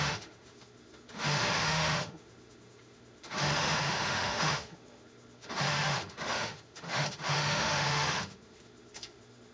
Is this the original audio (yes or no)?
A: no